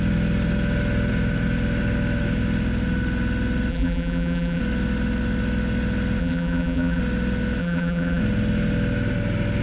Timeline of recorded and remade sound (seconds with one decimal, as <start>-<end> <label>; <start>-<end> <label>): 0.0-3.7 recorded; 3.7-4.6 remade; 4.6-6.2 recorded; 6.2-7.0 remade; 7.0-7.6 recorded; 7.6-8.2 remade; 8.2-9.6 recorded